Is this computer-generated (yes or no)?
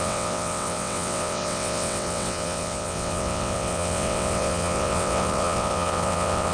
yes